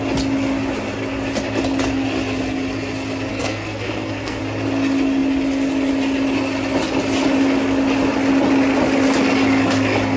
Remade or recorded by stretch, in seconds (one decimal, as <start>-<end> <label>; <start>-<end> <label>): 0.0-3.3 recorded; 3.3-4.4 remade; 4.4-10.2 recorded